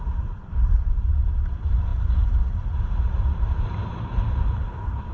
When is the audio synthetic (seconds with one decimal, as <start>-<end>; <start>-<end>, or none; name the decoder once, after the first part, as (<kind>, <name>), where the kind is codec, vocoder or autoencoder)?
none